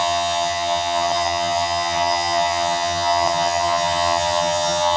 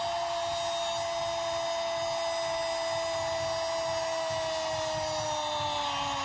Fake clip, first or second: first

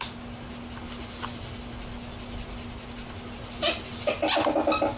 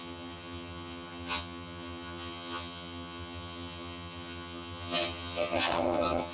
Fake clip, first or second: second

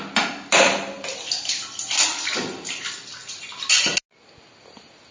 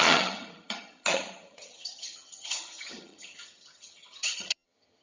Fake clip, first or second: second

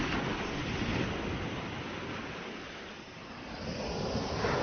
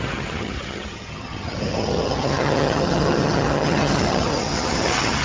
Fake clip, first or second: second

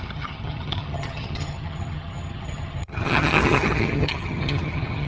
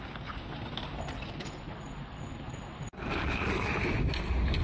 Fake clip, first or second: first